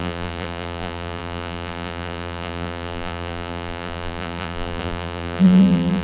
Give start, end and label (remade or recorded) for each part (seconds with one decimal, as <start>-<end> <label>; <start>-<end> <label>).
0.0-6.0 remade